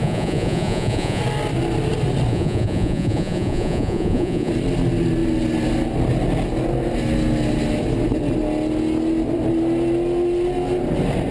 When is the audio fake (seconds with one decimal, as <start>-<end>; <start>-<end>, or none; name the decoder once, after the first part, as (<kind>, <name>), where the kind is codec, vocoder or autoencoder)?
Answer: 0.0-1.2 (vocoder, Vocos); 2.3-4.5